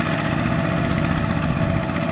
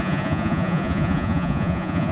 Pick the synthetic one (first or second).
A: second